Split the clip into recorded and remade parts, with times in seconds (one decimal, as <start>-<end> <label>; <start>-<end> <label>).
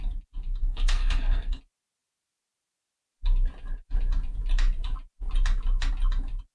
0.0-0.6 recorded; 0.6-1.6 remade; 1.6-6.5 recorded